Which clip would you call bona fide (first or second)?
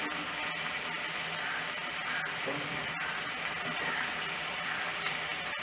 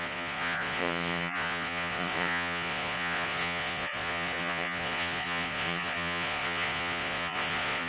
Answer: first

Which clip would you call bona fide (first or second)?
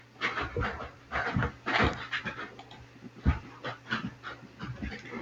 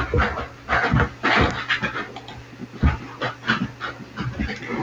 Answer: second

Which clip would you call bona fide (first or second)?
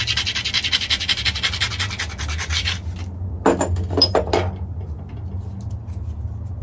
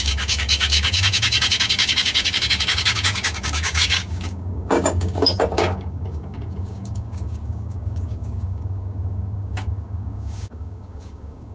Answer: first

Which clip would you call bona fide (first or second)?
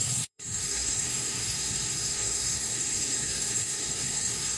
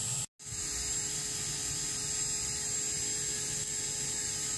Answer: second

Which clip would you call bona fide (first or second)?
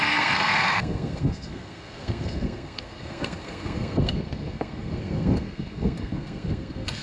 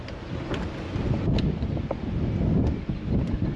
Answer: second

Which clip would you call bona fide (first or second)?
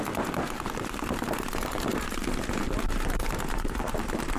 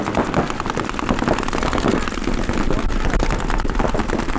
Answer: second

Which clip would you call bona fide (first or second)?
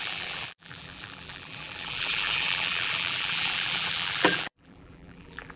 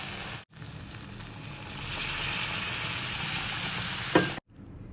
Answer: second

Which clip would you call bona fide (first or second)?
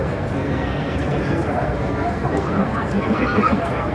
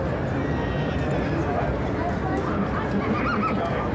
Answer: second